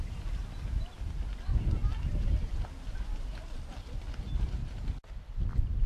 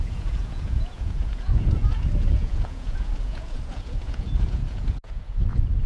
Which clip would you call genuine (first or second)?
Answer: first